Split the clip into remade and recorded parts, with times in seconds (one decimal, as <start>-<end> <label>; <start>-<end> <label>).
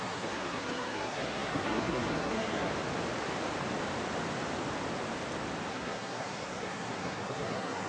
0.0-2.7 remade; 2.7-5.7 recorded; 5.7-7.9 remade